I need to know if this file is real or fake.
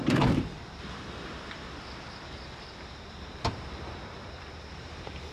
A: fake